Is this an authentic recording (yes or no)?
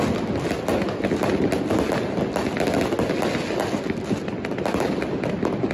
yes